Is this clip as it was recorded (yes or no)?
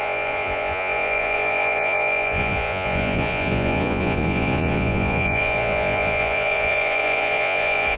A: no